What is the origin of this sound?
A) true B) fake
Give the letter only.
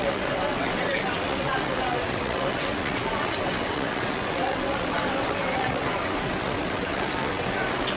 B